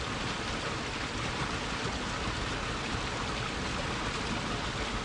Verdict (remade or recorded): recorded